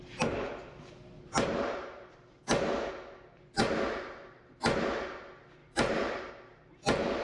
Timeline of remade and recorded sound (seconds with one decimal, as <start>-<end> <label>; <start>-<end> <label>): 0.0-1.3 recorded; 1.3-2.9 remade; 2.9-3.6 recorded; 3.6-4.8 remade; 4.8-5.6 recorded; 5.6-6.3 remade; 6.3-7.2 recorded